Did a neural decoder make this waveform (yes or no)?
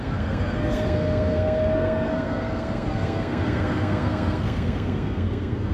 yes